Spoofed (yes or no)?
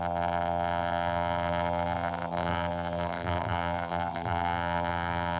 yes